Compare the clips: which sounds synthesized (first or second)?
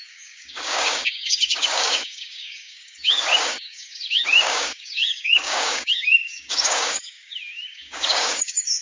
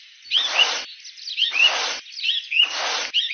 first